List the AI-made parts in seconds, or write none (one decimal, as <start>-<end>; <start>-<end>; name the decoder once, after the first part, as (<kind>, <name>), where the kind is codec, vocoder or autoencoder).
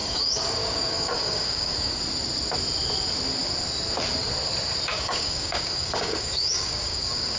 0.0-2.0 (codec, DAC); 4.9-7.4